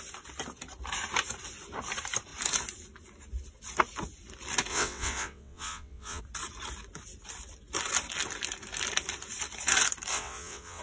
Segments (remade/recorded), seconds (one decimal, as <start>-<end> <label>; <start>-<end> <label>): 0.0-4.7 recorded; 4.7-6.2 remade; 6.2-10.1 recorded; 10.1-10.8 remade